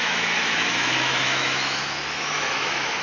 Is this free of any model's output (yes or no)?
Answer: no